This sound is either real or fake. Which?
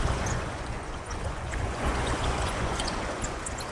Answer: fake